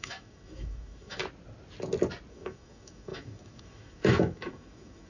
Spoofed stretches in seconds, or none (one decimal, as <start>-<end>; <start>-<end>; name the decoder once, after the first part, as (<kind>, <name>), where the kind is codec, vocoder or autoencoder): 0.0-1.2 (autoencoder, DAC-VAE); 2.3-5.1